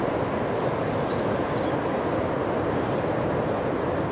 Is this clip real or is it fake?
real